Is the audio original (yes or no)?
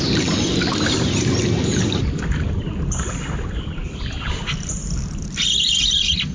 yes